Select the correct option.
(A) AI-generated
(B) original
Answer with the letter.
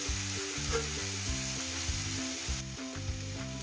B